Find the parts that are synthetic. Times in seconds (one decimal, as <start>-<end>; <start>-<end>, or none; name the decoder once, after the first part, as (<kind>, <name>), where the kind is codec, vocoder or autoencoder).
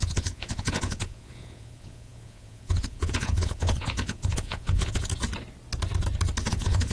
0.0-5.1 (vocoder, Vocos); 6.5-6.9